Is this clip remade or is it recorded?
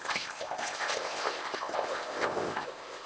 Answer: remade